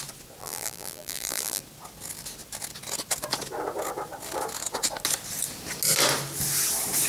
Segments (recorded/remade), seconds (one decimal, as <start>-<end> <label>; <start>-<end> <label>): 0.0-0.4 recorded; 0.4-1.6 remade; 1.6-7.1 recorded